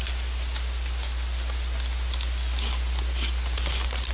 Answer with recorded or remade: recorded